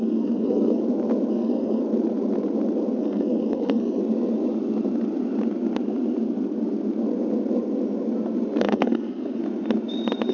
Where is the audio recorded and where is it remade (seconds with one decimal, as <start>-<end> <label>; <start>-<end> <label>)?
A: 0.0-0.8 remade; 0.8-1.3 recorded; 1.3-1.8 remade; 1.8-3.0 recorded; 3.0-4.0 remade; 4.0-8.6 recorded; 8.6-9.4 remade; 9.4-10.3 recorded